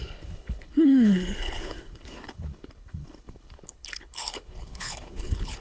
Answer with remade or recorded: remade